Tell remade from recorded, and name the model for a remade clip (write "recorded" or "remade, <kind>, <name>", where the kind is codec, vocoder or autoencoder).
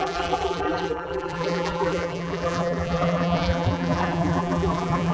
remade, vocoder, BigVGAN v2